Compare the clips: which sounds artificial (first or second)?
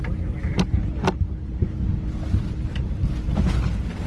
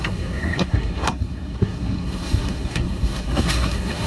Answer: second